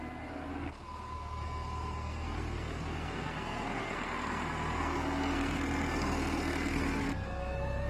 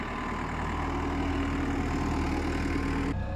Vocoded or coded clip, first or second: first